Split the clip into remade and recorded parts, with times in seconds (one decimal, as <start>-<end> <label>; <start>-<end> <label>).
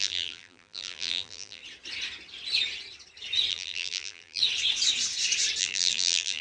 0.0-1.6 remade; 1.6-3.5 recorded; 3.5-4.4 remade; 4.4-5.6 recorded; 5.6-6.4 remade